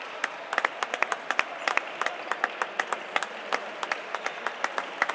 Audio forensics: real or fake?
real